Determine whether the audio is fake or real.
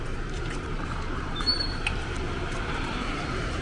fake